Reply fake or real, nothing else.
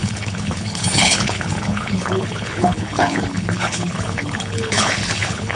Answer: fake